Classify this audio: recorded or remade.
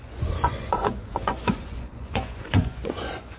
remade